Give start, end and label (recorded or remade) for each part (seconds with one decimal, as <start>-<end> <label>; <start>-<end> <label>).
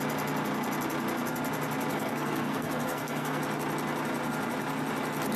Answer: 0.0-1.9 recorded; 1.9-3.4 remade; 3.4-5.4 recorded